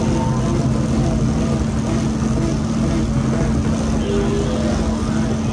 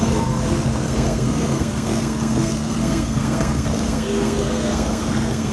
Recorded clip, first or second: first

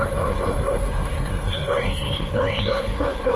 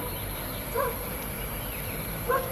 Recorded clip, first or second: second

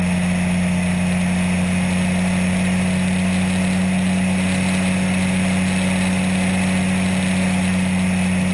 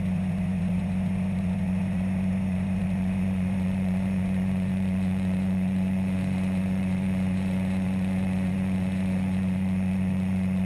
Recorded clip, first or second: first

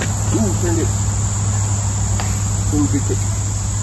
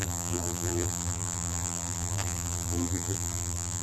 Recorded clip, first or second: first